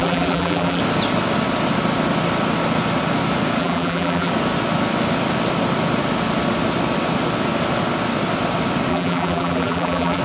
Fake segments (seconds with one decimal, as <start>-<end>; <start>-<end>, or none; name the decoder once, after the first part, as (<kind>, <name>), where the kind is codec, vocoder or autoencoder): 0.0-0.8 (vocoder, BigVGAN v2); 3.6-4.3; 8.9-10.2